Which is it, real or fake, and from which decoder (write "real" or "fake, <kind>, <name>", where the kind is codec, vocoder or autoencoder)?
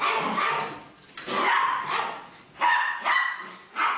real